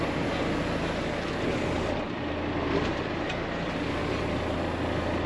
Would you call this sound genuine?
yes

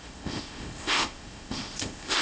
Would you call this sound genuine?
no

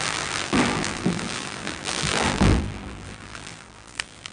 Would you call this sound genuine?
no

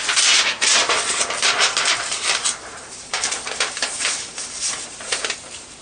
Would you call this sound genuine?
no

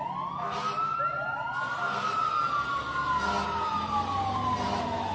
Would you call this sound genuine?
yes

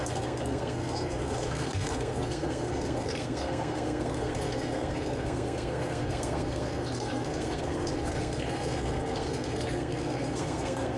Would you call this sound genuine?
no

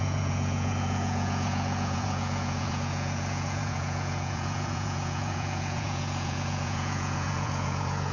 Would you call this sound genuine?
no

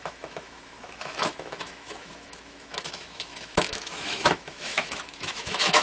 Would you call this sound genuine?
no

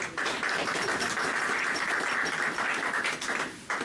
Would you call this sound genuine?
yes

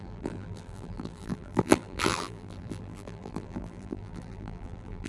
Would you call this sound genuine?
no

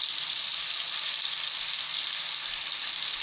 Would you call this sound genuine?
yes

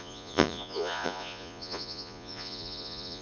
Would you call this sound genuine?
no